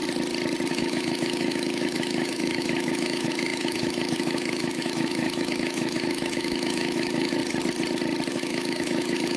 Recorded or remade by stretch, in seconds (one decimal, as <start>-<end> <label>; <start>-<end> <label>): 0.0-0.7 recorded; 0.7-7.4 remade; 7.4-8.3 recorded; 8.3-9.4 remade